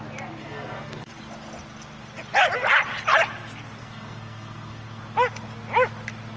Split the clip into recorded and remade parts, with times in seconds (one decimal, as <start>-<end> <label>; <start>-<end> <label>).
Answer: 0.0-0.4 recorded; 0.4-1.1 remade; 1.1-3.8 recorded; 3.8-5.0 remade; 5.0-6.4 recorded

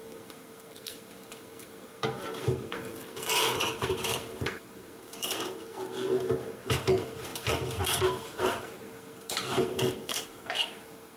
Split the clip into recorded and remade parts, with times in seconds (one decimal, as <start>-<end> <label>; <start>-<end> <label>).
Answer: 0.0-11.2 remade

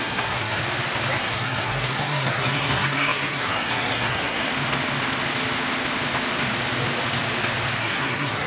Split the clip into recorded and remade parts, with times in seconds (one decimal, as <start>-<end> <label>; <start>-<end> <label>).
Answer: 0.0-0.6 remade; 0.6-1.2 recorded; 1.2-4.5 remade; 4.5-7.8 recorded; 7.8-8.5 remade